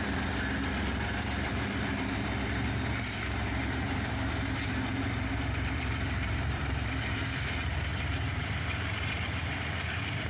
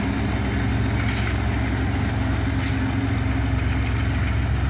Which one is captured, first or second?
second